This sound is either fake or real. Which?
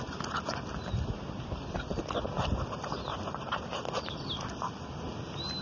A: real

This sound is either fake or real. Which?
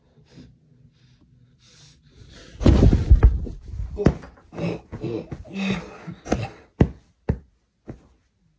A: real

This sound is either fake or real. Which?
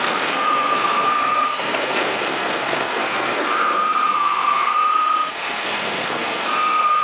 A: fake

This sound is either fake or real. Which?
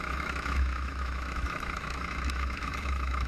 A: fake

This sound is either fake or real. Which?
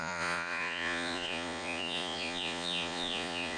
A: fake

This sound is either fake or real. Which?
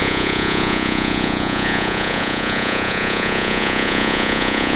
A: fake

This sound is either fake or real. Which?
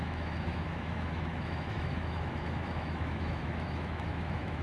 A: fake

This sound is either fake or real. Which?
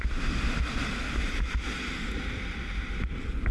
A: real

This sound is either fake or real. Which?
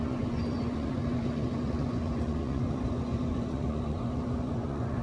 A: fake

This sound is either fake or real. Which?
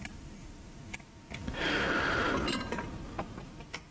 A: real